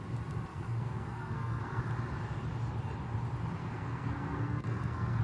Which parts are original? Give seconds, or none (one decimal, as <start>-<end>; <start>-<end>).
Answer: 0.0-0.5; 1.8-3.6